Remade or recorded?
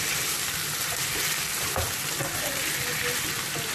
recorded